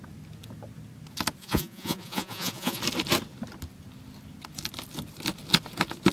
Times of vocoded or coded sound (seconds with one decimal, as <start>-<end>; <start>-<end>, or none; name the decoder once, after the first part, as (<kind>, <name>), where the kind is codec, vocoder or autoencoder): 1.4-2.8 (vocoder, Vocos)